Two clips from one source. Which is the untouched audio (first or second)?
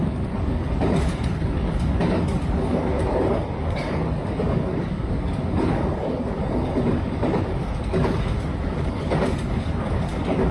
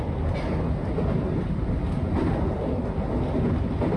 second